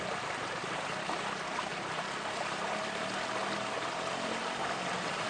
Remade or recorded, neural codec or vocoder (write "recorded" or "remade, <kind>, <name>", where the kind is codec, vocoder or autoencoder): recorded